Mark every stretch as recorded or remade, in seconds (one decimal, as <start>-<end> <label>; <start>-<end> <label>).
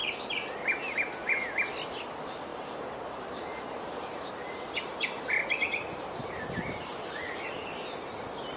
0.0-2.5 recorded; 2.5-4.3 remade; 4.3-6.2 recorded; 6.2-7.1 remade; 7.1-8.6 recorded